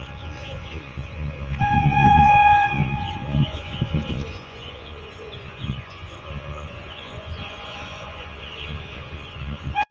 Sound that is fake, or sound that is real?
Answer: fake